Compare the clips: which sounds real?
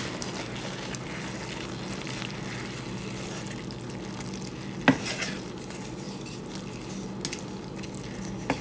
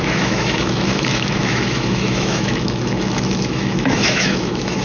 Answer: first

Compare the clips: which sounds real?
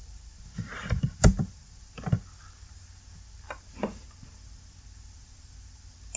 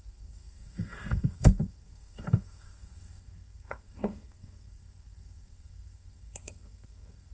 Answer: first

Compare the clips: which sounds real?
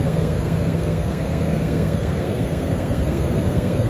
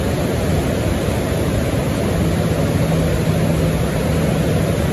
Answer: second